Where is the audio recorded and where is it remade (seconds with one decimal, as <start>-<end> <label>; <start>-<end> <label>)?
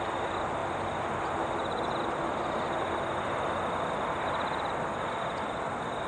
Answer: 0.0-6.1 recorded